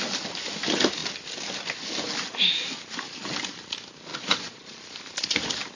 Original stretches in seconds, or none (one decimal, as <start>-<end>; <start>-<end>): 0.0-4.1; 4.8-5.8